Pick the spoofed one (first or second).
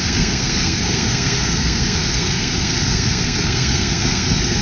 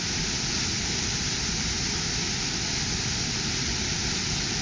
first